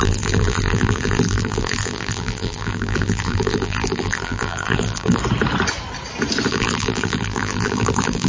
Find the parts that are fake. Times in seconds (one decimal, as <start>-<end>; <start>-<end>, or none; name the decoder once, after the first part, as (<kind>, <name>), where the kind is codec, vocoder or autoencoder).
0.0-5.2 (vocoder, BigVGAN v2); 6.5-8.3